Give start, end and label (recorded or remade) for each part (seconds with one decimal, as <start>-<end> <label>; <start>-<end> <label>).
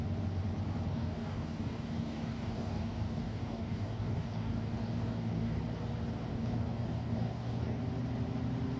0.0-0.9 recorded; 0.9-5.6 remade; 5.6-6.3 recorded; 6.3-7.8 remade; 7.8-8.8 recorded